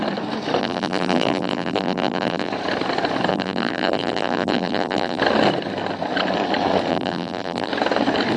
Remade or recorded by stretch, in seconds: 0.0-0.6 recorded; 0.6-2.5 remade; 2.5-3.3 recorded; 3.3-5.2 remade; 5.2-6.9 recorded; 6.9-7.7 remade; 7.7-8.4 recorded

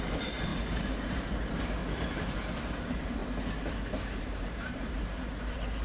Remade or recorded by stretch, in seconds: 0.0-0.5 remade; 0.5-1.1 recorded; 1.1-1.8 remade; 1.8-2.8 recorded; 2.8-3.2 remade; 3.2-4.2 recorded; 4.2-5.8 remade

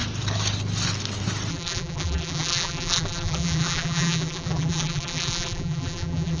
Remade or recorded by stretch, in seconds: 0.0-1.5 recorded; 1.5-6.4 remade

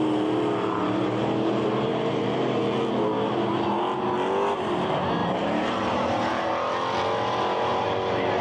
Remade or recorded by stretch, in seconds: 0.0-1.9 recorded; 1.9-2.6 remade; 2.6-5.2 recorded; 5.2-6.5 remade; 6.5-8.4 recorded

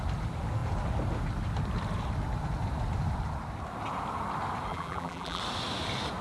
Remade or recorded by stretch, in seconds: 0.0-4.7 recorded; 4.7-5.4 remade; 5.4-6.2 recorded